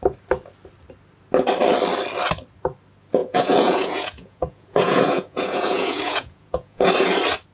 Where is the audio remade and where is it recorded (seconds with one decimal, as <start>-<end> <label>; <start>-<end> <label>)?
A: 0.0-3.2 recorded; 3.2-6.9 remade; 6.9-7.5 recorded